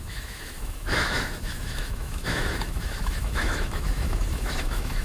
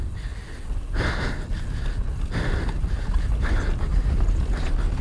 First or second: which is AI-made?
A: first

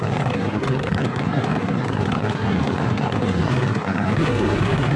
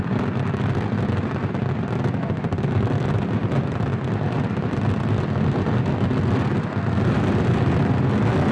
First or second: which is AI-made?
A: first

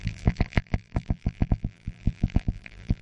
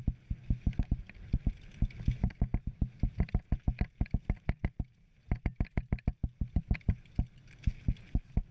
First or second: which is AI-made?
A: first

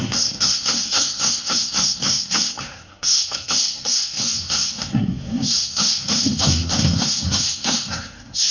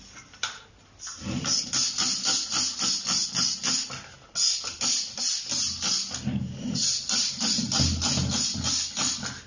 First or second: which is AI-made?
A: first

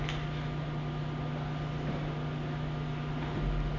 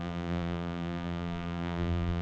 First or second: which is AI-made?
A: second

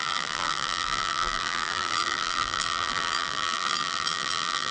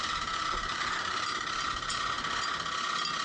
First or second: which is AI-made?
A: first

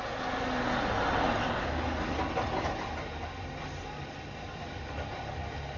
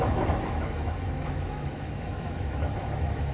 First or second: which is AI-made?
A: second